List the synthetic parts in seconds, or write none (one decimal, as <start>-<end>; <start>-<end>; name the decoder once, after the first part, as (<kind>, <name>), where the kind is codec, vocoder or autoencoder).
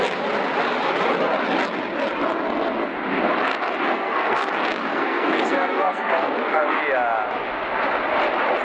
3.9-4.5 (codec, SNAC); 4.9-6.8